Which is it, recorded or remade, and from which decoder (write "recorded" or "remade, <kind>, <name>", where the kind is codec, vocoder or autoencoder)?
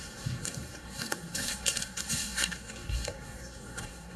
remade, codec, SNAC